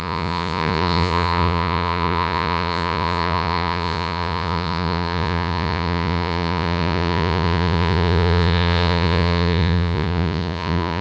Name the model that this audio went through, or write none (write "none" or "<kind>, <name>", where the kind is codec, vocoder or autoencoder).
vocoder, Vocos